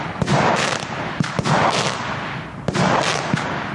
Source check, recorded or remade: recorded